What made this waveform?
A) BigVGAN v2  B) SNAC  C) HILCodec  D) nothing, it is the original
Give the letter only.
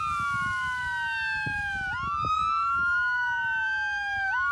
D